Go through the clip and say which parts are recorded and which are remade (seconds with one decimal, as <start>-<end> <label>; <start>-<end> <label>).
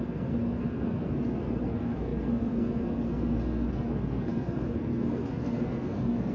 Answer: 0.0-6.3 remade